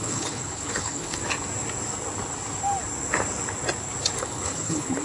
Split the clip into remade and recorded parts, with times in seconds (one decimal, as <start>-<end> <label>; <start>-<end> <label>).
0.0-1.2 remade; 1.2-4.2 recorded; 4.2-5.0 remade